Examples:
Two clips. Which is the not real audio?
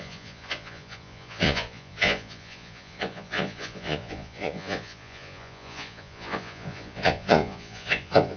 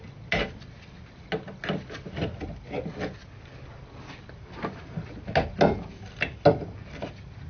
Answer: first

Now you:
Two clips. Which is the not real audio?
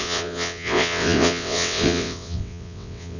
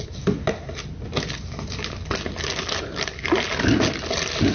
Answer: first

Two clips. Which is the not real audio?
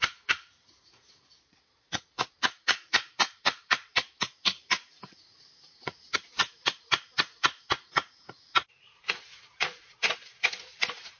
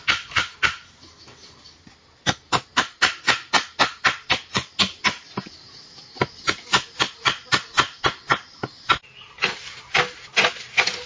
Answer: first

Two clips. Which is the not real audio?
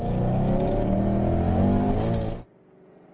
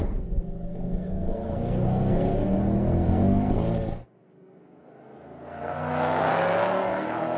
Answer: second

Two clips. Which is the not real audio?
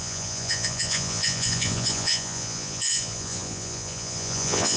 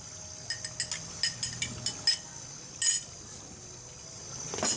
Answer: first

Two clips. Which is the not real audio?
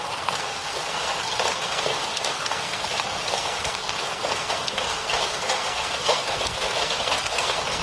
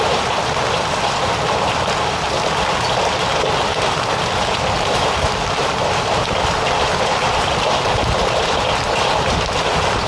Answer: first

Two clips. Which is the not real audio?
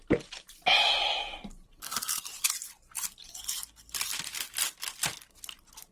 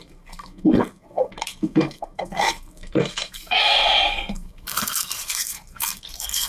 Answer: second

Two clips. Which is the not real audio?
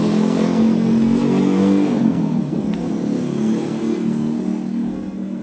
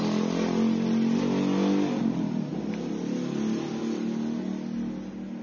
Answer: first